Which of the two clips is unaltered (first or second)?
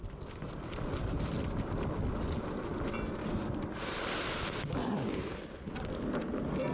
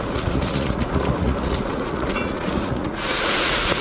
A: first